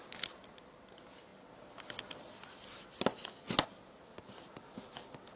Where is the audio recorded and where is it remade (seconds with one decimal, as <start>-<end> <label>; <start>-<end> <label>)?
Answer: 0.0-5.4 recorded